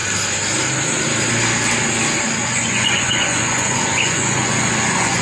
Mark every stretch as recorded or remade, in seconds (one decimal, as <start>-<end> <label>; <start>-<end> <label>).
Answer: 0.0-2.4 recorded; 2.4-5.2 remade